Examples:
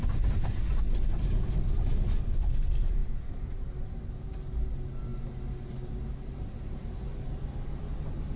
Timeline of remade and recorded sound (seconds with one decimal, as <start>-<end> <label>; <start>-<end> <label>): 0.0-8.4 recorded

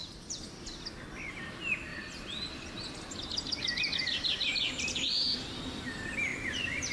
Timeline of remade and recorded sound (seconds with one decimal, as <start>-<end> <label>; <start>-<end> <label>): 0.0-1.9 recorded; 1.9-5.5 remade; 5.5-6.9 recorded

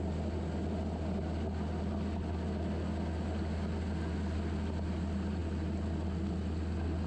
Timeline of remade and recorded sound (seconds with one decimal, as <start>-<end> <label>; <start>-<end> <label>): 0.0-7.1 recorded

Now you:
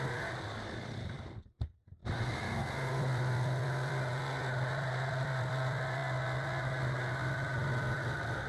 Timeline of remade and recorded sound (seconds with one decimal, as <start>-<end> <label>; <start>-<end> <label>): 0.0-6.0 remade; 6.0-6.8 recorded; 6.8-8.5 remade